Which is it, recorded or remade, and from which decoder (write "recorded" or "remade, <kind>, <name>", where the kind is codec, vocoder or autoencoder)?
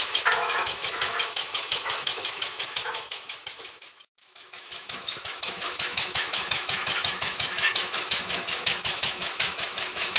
remade, autoencoder, DAC-VAE